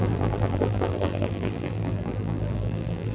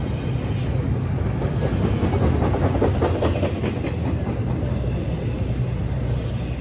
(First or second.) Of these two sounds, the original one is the second